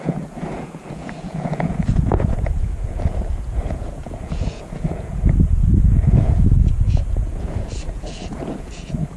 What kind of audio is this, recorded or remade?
remade